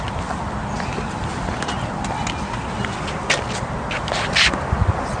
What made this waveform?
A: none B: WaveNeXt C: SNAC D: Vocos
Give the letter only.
A